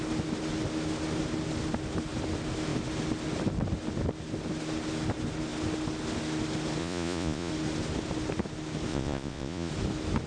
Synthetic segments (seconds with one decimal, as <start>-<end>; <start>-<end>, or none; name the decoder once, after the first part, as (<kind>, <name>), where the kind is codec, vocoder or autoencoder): 6.8-7.5 (vocoder, Vocos); 8.9-9.7